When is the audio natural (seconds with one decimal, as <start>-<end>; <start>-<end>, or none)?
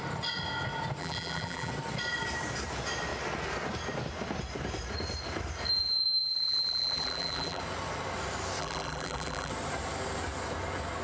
0.0-1.0; 1.7-6.2; 7.6-8.6; 9.5-11.0